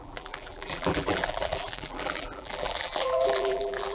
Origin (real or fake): fake